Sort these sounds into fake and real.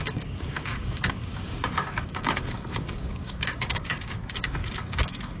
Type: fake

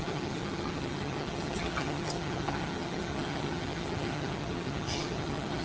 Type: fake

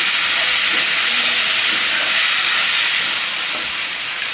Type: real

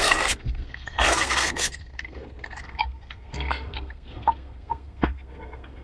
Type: fake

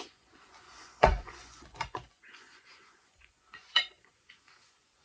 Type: fake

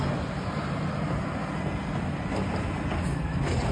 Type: real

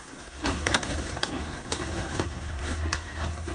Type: fake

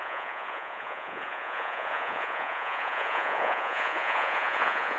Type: fake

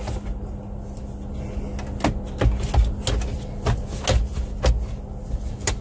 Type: real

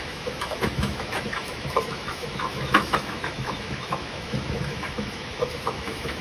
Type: fake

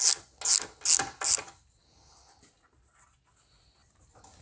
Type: real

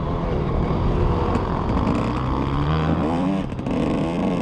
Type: fake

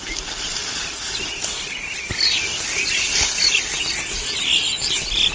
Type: real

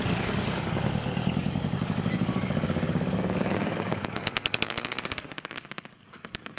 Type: fake